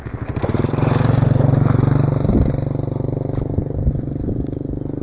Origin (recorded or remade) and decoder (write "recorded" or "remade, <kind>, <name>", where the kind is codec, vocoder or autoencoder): recorded